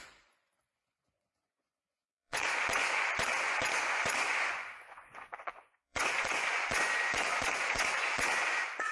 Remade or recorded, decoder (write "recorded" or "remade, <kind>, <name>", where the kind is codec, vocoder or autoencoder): remade, vocoder, Vocos